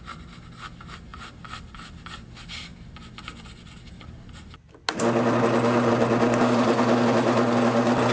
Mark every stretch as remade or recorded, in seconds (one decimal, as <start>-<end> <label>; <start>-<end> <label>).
0.0-8.1 recorded